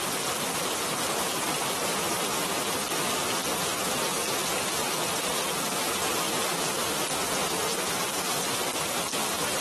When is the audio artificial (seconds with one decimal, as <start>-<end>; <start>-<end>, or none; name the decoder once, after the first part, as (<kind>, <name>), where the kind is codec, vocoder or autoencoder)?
none